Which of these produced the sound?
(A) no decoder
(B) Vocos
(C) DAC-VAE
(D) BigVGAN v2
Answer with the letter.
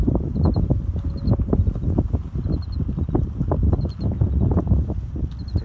A